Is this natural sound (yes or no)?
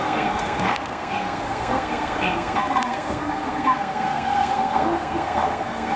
no